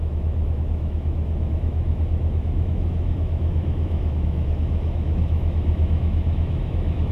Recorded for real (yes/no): no